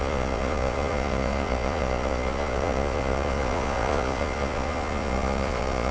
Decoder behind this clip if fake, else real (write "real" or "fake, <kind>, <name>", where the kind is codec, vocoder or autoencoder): fake, vocoder, Vocos